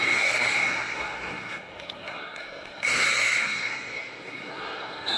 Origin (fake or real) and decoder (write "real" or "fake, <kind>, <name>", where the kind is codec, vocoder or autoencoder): fake, codec, SNAC